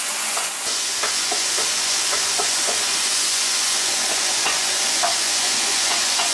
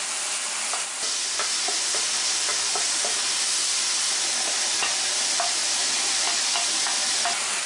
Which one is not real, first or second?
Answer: first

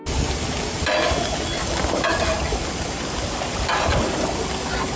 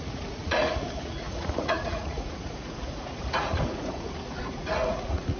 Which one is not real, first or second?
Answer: second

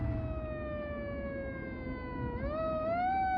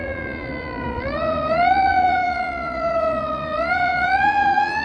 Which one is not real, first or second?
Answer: second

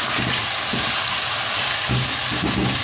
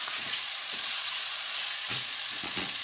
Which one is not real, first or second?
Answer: second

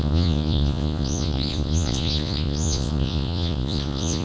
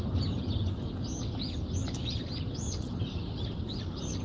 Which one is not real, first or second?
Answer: first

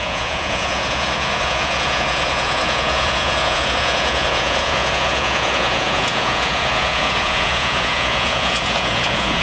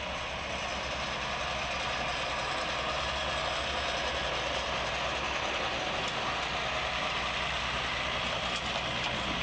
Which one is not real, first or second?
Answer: first